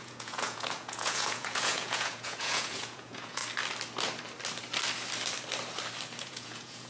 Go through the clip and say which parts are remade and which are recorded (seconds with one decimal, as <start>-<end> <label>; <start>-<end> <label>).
0.0-3.4 remade; 3.4-6.2 recorded; 6.2-6.9 remade

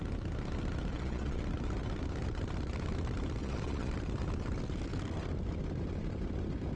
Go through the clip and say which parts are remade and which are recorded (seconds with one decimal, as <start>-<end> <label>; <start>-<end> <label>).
0.0-0.9 recorded; 0.9-1.4 remade; 1.4-3.4 recorded; 3.4-3.9 remade; 3.9-6.8 recorded